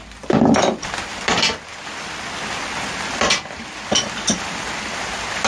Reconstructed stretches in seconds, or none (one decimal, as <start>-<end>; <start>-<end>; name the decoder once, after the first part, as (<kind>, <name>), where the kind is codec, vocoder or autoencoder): none